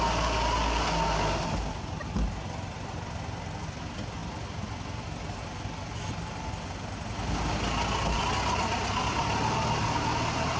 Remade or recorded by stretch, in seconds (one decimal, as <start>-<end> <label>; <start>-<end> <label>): 0.0-10.6 recorded